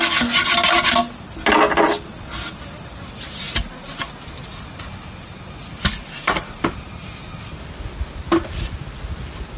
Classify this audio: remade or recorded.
recorded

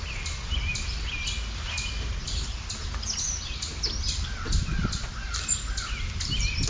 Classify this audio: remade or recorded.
recorded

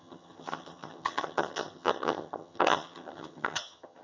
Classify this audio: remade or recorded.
remade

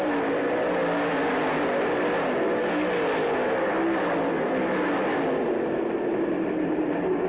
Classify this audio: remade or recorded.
recorded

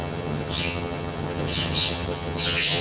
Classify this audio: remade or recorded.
remade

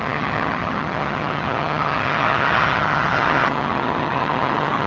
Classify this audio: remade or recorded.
remade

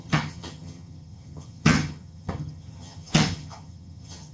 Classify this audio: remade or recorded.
remade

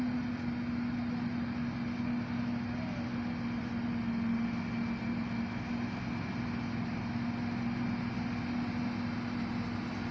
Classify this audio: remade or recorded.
recorded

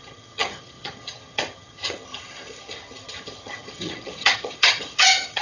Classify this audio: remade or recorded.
remade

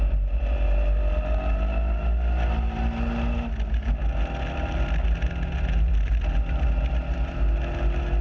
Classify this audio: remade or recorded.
recorded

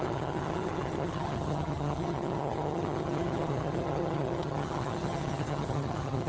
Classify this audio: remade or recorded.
remade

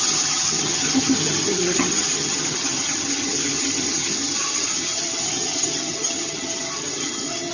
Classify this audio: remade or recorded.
remade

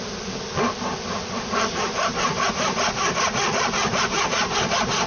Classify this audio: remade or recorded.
recorded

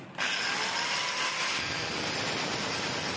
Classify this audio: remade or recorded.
recorded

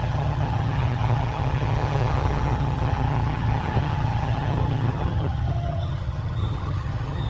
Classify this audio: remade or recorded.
remade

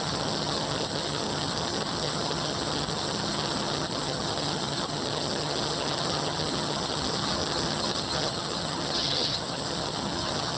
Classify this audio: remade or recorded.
remade